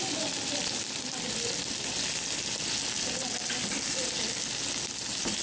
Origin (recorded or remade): recorded